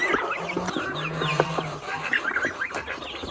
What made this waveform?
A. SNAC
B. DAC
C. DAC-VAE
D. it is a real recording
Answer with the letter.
D